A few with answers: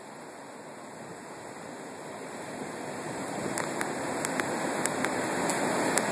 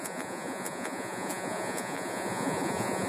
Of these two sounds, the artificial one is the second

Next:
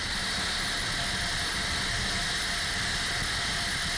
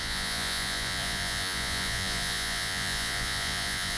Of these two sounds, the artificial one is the second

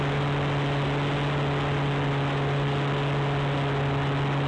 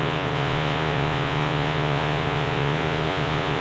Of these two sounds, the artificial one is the second